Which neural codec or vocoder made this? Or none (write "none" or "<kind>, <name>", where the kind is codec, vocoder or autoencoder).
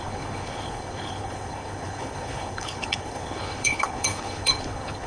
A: codec, HILCodec